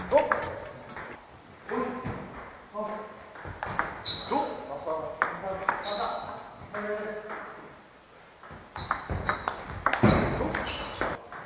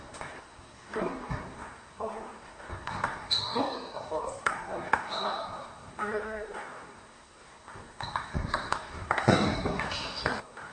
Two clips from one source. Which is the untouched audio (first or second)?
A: first